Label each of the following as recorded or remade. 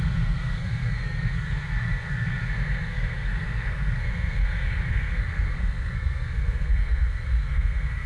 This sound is remade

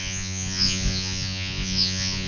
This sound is remade